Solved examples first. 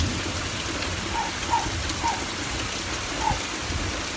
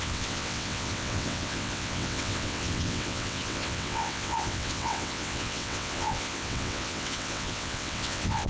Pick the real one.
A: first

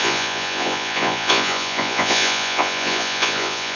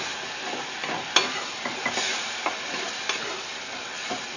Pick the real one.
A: second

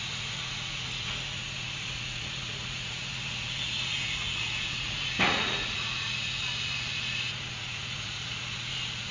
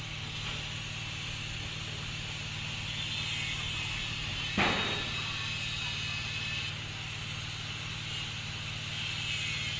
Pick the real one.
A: second